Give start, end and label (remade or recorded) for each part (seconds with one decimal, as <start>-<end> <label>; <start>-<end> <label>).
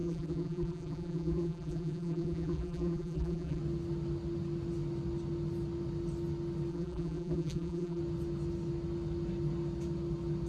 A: 0.0-3.6 remade; 3.6-6.7 recorded; 6.7-8.0 remade; 8.0-10.5 recorded